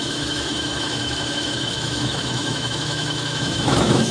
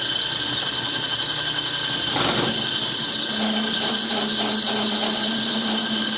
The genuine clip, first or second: second